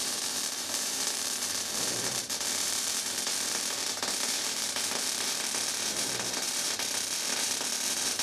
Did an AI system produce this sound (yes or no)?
yes